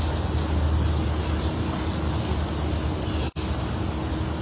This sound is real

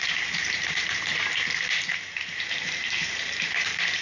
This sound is fake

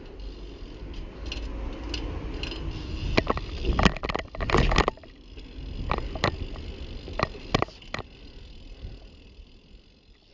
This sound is real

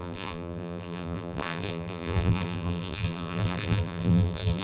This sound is fake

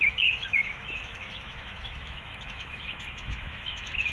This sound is fake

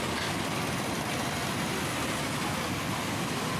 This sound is real